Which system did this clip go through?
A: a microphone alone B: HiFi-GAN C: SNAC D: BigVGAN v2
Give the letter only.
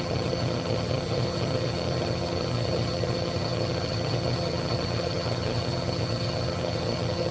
B